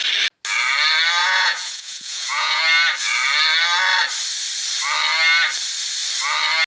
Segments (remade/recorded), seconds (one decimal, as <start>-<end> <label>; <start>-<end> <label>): 0.0-1.2 recorded; 1.2-2.6 remade; 2.6-6.7 recorded